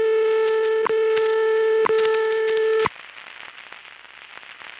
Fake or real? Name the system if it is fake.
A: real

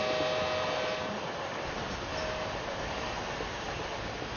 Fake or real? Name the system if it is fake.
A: real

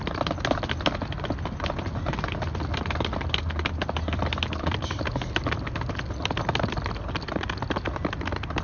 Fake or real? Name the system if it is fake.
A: real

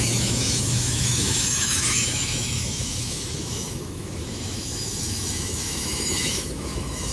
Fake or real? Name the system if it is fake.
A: fake, autoencoder, DAC-VAE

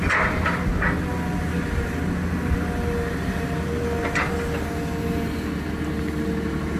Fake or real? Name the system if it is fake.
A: real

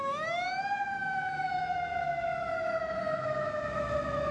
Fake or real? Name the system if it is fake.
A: fake, autoencoder, DAC-VAE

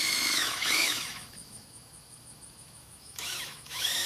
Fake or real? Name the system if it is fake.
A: fake, autoencoder, DAC-VAE